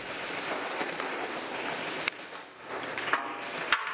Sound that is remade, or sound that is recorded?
recorded